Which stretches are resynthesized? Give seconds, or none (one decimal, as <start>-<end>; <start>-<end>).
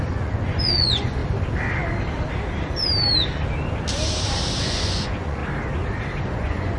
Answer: 0.0-1.2; 4.6-5.4; 6.2-6.8